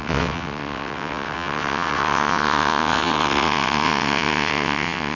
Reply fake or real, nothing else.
fake